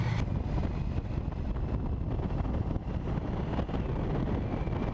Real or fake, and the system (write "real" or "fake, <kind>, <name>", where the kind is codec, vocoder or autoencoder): real